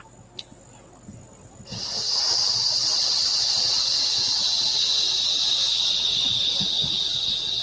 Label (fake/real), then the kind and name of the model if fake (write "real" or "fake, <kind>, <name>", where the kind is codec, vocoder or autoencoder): real